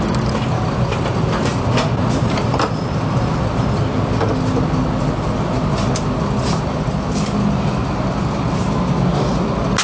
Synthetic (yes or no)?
no